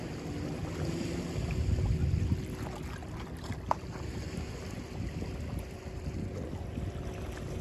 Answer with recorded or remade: recorded